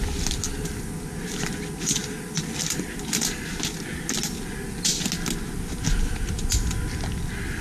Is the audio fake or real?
real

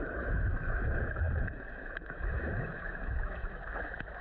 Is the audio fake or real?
fake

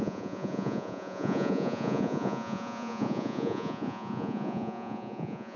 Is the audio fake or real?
fake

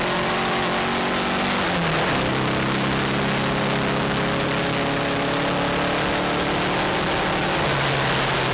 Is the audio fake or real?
real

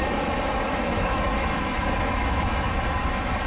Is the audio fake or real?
fake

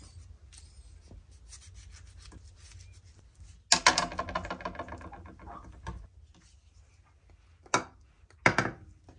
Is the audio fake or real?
real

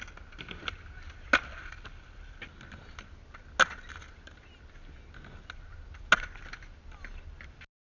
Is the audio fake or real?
real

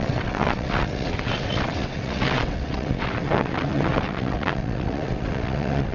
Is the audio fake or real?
fake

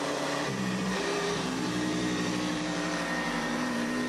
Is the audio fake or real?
fake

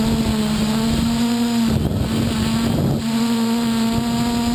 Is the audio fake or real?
real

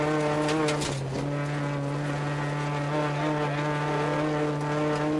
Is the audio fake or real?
real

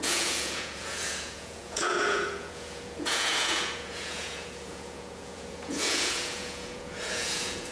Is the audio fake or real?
fake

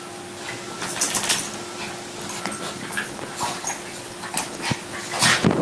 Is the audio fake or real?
real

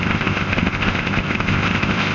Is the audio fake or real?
fake